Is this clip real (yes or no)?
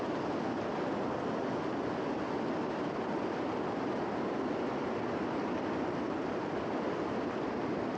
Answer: yes